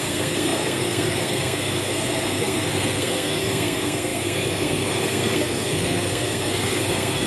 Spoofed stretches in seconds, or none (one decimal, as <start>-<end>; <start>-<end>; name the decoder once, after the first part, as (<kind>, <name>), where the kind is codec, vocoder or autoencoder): 0.0-7.3 (codec, SNAC)